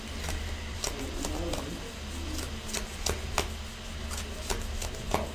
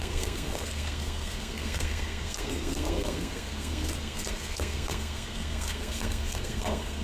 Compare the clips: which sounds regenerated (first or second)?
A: second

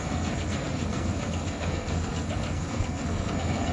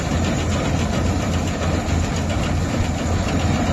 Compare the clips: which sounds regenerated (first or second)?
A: first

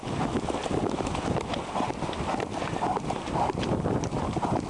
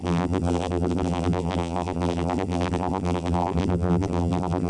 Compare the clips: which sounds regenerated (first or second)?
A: second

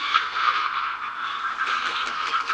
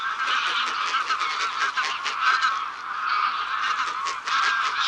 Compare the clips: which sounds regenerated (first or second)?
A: first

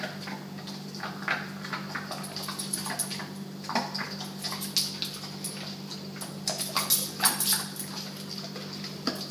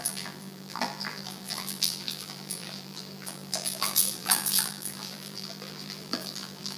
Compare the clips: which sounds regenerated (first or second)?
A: second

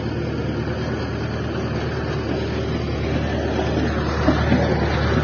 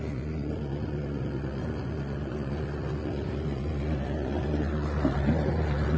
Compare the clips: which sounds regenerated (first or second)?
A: second